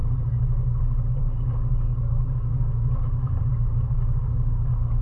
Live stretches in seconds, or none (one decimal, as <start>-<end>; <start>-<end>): 0.0-5.0